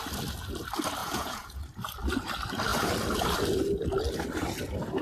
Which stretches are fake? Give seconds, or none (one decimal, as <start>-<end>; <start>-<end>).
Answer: 1.0-1.6